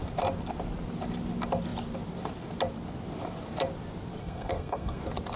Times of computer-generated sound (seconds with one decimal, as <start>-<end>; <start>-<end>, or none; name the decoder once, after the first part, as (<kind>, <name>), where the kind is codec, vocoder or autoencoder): 4.2-5.0 (codec, SNAC)